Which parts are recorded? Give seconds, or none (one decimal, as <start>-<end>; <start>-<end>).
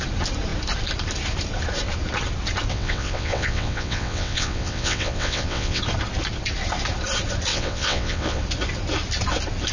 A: 0.0-2.7; 5.8-7.5; 8.4-9.7